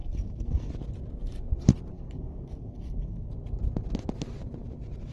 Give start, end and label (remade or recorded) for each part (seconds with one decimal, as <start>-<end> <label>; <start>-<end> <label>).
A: 0.0-0.7 remade; 0.7-1.9 recorded; 1.9-3.3 remade; 3.3-5.1 recorded